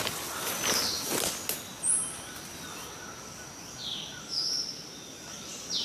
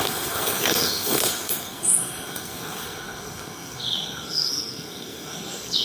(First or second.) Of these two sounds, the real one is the first